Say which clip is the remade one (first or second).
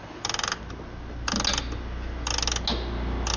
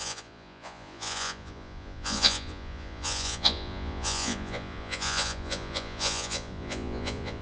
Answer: second